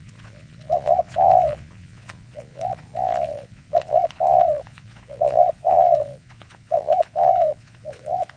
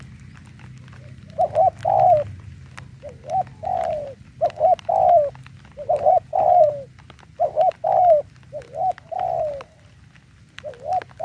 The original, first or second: second